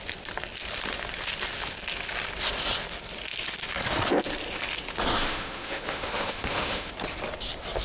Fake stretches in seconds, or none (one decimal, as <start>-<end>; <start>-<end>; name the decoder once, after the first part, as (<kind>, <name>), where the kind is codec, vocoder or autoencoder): 5.1-6.9 (autoencoder, DAC-VAE)

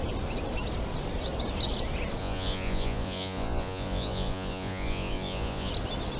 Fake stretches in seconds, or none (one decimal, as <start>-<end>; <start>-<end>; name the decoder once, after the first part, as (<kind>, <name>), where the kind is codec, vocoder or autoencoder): 2.2-5.7 (vocoder, Vocos)

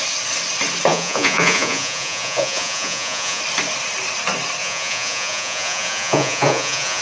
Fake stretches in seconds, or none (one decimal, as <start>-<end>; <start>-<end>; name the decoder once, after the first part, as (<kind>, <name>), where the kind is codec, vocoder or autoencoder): 0.9-3.4 (vocoder, Vocos); 4.6-7.0

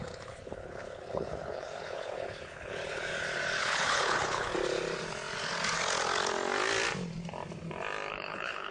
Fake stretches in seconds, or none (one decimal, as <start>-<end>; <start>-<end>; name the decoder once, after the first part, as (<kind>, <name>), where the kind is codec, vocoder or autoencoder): 0.0-3.1 (codec, HILCodec); 3.6-4.5; 8.1-8.7